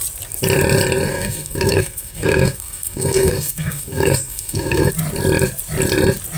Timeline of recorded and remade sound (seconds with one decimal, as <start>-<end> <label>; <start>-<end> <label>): 0.0-1.1 recorded; 1.1-4.9 remade; 4.9-6.4 recorded